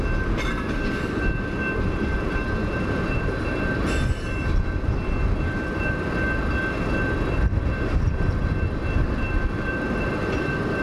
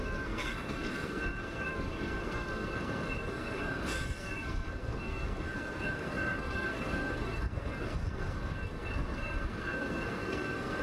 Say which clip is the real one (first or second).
first